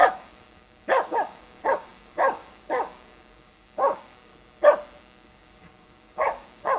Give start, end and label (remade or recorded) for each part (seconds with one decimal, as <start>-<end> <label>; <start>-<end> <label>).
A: 0.0-4.3 remade; 4.3-5.0 recorded; 5.0-6.8 remade